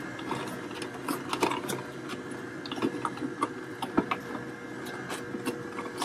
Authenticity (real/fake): real